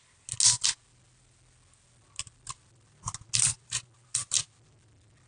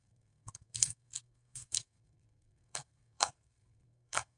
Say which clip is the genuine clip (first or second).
first